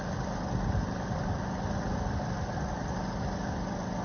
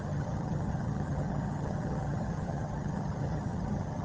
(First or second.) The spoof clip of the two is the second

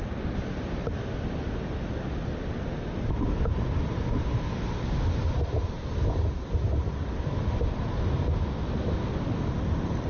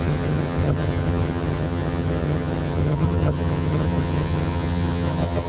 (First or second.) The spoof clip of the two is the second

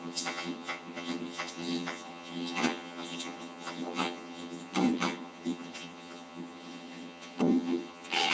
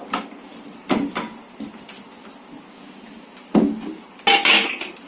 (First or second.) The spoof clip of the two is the first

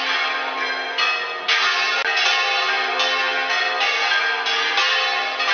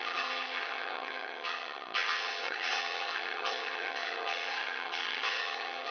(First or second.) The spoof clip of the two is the second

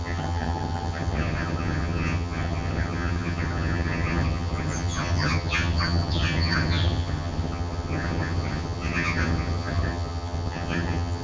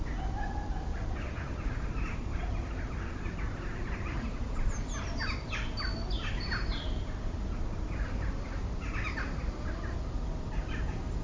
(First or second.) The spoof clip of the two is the first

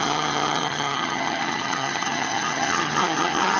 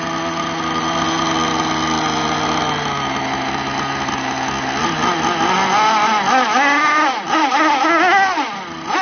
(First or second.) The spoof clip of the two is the first